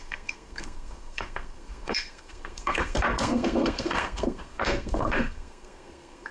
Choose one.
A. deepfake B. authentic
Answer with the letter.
A